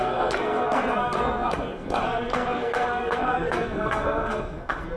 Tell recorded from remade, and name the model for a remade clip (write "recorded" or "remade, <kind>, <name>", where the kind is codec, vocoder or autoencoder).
remade, codec, SNAC